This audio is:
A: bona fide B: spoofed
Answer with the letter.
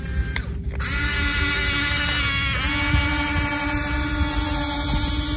A